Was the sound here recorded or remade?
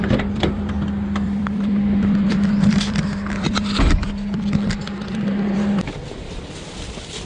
remade